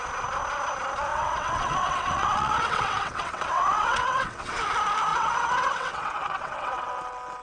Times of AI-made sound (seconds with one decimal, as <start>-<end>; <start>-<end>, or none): 1.1-4.6; 5.1-6.9